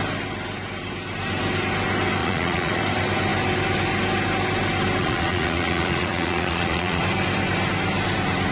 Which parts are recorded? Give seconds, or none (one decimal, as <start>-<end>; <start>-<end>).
0.0-2.2; 2.8-5.0; 7.0-8.5